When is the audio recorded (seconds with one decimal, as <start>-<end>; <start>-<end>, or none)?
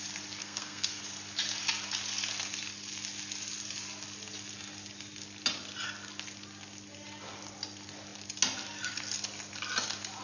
0.0-0.4; 1.0-10.2